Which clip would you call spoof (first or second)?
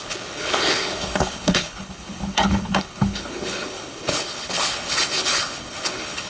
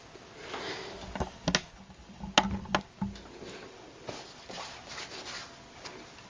first